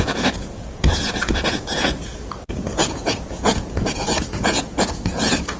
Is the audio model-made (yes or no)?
yes